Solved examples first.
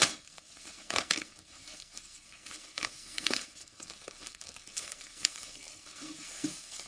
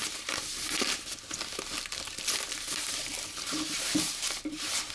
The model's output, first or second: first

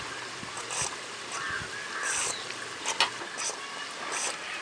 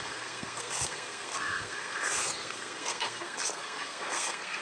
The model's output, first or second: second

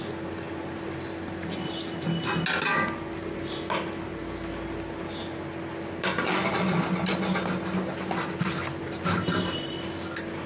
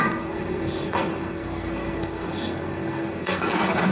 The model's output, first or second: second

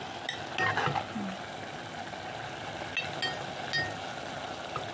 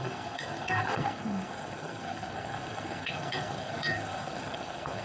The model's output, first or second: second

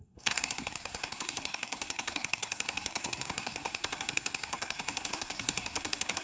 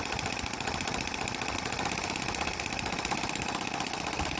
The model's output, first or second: first